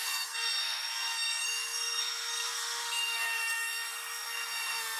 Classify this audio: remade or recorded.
remade